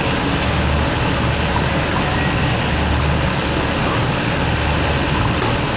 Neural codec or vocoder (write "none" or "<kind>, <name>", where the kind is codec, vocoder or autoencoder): none